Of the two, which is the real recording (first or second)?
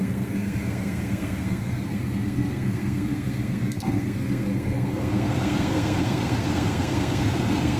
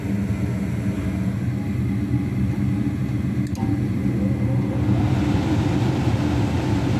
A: second